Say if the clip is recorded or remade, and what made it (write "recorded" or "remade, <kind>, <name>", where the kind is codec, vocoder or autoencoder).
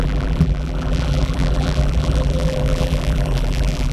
remade, vocoder, BigVGAN v2